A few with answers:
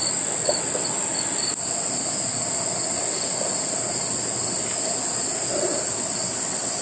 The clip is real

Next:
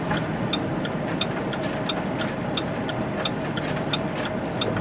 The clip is real